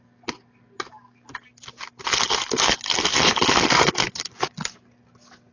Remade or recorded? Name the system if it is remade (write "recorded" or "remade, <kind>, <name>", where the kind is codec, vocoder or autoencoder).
recorded